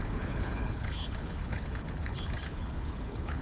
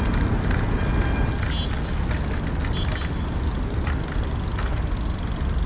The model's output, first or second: first